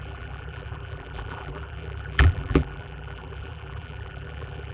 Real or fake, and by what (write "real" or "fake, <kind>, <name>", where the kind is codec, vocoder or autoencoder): fake, vocoder, BigVGAN v2